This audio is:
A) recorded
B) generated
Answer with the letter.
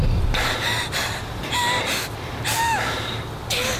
A